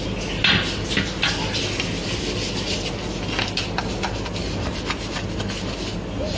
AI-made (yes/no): no